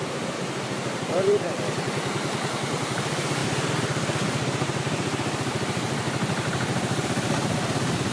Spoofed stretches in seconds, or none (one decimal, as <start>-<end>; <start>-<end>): 0.0-1.4; 3.4-4.8